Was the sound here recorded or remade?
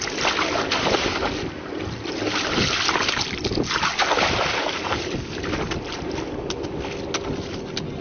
recorded